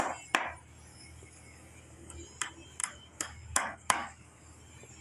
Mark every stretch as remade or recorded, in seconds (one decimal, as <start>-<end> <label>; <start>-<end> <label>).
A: 0.0-0.9 recorded; 0.9-2.2 remade; 2.2-2.8 recorded; 2.8-4.6 remade; 4.6-5.0 recorded